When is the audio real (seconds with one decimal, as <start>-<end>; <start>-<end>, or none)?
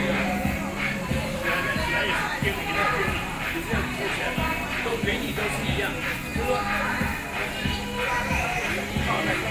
0.0-1.1; 1.7-2.4; 4.0-9.5